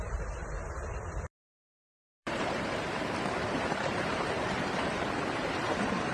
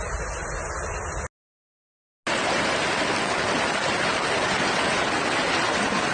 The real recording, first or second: second